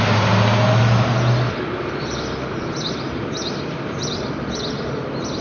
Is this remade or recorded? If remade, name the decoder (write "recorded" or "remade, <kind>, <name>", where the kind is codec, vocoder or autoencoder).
recorded